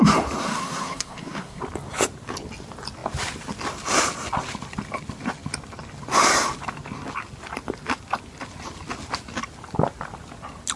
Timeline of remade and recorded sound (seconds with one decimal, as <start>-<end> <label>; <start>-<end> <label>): 0.0-0.4 recorded; 0.4-1.6 remade; 1.6-10.8 recorded